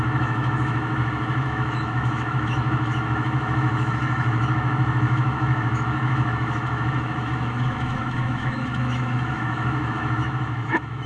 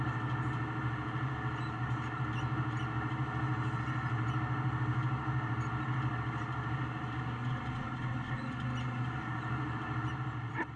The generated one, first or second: first